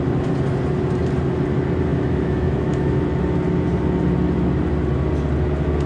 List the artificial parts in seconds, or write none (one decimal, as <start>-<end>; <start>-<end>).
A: 1.9-3.0

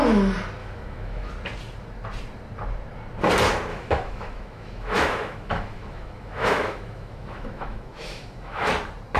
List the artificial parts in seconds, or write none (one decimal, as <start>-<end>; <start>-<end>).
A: 0.6-1.3; 3.7-8.7

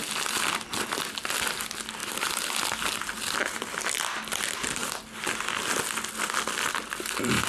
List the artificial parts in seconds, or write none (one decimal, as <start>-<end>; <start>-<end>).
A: none

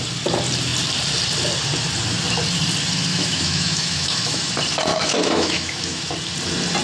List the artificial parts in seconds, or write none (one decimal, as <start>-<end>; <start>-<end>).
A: 3.1-4.5; 4.9-6.1

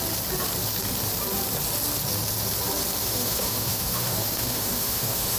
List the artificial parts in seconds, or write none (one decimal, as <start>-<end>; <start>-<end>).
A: 3.0-5.4